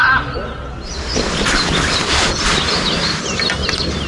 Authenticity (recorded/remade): recorded